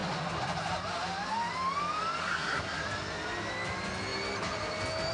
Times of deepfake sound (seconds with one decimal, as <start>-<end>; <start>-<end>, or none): 2.2-2.8